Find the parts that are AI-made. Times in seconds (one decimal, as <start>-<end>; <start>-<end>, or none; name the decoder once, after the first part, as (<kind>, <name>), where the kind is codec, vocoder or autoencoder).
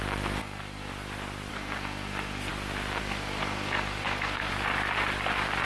0.4-0.9 (codec, SNAC); 1.5-2.5; 3.0-4.5